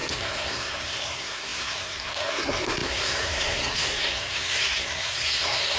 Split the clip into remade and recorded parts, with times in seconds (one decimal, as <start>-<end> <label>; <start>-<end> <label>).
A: 0.0-5.8 remade